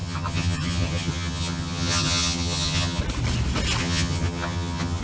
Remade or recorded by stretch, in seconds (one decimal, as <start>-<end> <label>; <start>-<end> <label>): 0.0-3.0 remade; 3.0-3.8 recorded; 3.8-5.0 remade